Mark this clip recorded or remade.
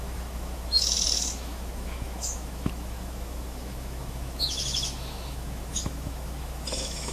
remade